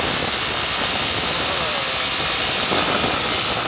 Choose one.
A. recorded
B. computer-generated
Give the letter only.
B